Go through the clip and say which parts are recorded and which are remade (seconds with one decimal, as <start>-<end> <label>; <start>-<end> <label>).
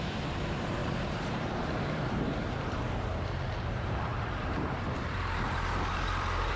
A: 0.0-6.6 remade